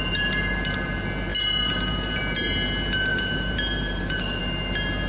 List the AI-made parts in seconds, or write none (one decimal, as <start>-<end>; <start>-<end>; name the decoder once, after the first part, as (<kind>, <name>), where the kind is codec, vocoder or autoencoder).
1.3-2.2 (vocoder, BigVGAN v2); 3.1-4.4